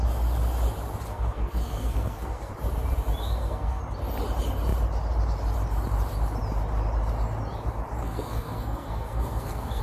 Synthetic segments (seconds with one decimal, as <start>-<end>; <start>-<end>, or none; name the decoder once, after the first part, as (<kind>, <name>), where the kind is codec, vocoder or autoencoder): 1.1-2.5 (codec, SNAC); 3.2-3.8; 8.0-9.8